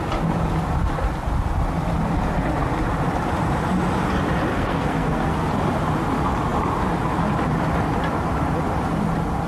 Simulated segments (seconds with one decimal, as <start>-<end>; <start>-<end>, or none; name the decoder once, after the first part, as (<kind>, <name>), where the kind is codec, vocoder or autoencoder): 4.5-5.5 (codec, SNAC)

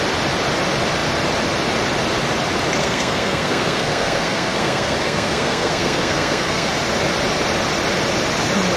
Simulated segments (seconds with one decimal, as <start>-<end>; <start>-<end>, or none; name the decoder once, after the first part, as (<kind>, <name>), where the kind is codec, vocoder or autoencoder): 2.8-6.7 (codec, SNAC)

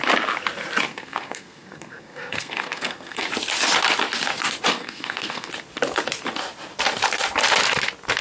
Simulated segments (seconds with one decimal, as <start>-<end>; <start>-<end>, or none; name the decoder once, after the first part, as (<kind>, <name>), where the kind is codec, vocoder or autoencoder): 0.9-3.3 (codec, SNAC); 4.7-5.5

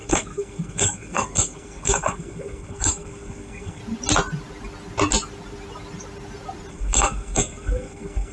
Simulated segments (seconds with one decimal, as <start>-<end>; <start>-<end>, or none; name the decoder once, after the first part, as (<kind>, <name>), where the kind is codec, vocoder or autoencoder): 0.0-3.8 (codec, SNAC); 6.7-8.3

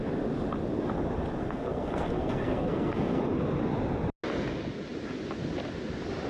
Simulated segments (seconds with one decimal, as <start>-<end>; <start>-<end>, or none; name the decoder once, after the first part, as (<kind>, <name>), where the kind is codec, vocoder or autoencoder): 1.4-3.2 (codec, SNAC)